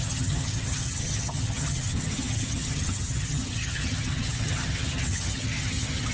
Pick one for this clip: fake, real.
fake